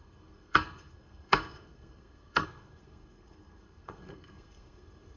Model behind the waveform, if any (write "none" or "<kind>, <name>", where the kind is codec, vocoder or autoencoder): codec, SNAC